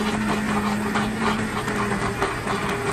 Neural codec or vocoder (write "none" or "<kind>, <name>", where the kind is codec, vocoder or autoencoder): none